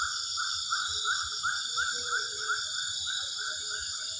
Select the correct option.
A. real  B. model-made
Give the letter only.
A